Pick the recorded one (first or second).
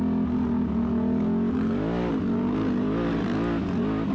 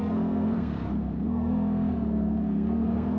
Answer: first